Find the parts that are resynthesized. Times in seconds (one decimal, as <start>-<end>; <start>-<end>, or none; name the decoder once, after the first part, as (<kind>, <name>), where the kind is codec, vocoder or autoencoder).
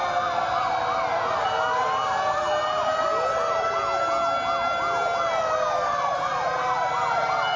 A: none